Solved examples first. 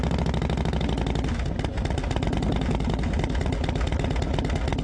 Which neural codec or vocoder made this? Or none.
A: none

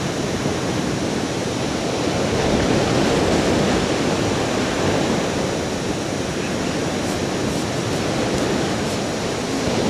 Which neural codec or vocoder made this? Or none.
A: none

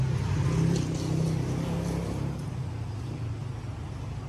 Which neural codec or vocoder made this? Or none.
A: none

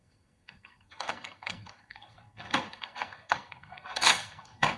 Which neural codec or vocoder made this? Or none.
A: codec, SNAC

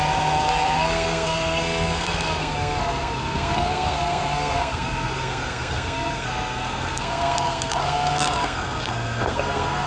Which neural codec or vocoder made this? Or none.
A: codec, SNAC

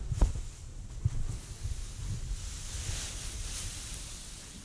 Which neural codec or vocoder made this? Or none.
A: none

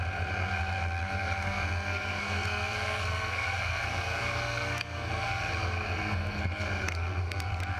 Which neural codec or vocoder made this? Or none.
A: codec, SNAC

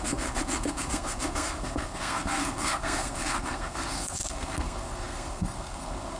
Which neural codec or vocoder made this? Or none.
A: codec, SNAC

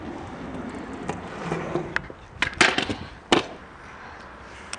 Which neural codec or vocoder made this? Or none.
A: none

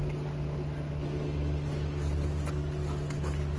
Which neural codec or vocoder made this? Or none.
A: none